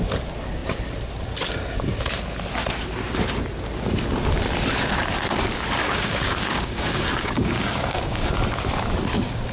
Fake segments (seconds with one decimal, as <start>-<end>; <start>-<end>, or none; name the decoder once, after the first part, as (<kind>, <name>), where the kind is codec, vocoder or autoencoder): 5.8-8.3 (codec, DAC)